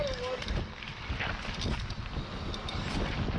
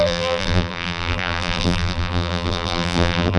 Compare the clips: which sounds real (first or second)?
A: first